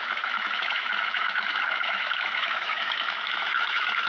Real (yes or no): no